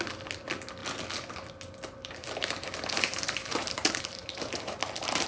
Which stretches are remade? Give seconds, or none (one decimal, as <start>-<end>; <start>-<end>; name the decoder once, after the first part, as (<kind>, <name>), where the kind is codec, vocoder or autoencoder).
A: 2.0-5.3 (vocoder, BigVGAN v2)